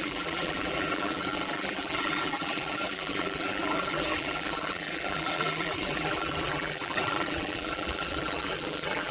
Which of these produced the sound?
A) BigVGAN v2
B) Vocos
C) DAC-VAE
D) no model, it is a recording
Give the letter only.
A